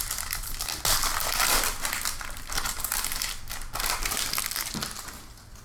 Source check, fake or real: real